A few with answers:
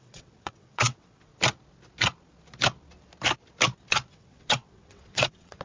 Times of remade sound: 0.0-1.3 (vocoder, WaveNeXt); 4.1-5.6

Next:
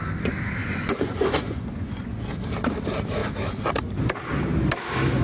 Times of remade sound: 0.6-2.4 (vocoder, Vocos)

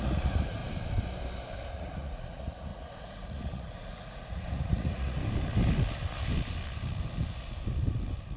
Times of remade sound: 0.0-0.6 (vocoder, Vocos); 1.7-5.2

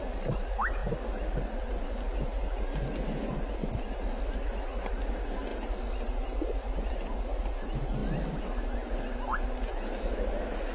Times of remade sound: none

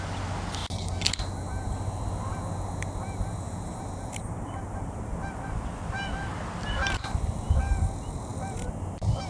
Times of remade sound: none

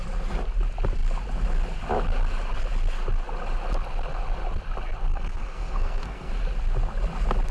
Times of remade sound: 5.1-6.3 (codec, SNAC)

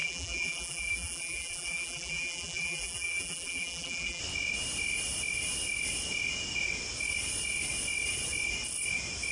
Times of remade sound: 0.0-4.2 (vocoder, BigVGAN v2)